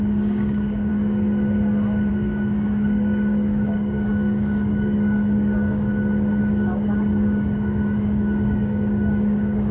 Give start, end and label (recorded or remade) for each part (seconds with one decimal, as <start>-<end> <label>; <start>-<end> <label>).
0.0-0.9 remade; 0.9-2.1 recorded; 2.1-5.9 remade; 5.9-6.4 recorded; 6.4-9.7 remade

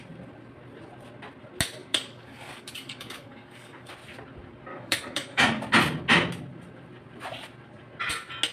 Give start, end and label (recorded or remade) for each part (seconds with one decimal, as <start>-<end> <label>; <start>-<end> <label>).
0.0-1.8 recorded; 1.8-3.9 remade; 3.9-4.7 recorded; 4.7-5.6 remade; 5.6-8.5 recorded

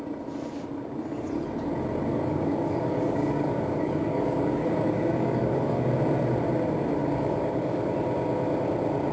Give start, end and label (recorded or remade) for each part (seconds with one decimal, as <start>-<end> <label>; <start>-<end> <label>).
0.0-2.1 recorded; 2.1-5.9 remade; 5.9-7.0 recorded; 7.0-7.9 remade; 7.9-9.1 recorded

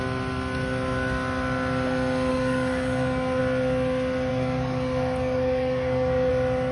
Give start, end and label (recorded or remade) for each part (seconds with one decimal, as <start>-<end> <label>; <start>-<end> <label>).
0.0-2.3 recorded; 2.3-3.4 remade; 3.4-4.3 recorded; 4.3-6.3 remade; 6.3-6.7 recorded